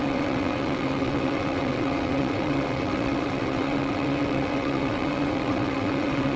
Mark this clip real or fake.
fake